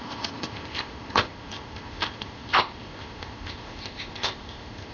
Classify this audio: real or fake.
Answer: fake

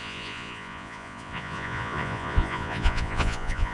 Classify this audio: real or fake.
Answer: fake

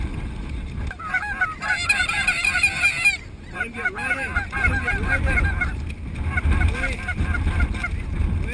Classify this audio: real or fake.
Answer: real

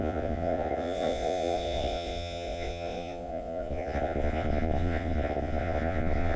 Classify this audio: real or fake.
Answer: fake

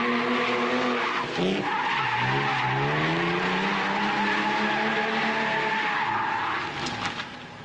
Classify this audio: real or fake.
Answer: real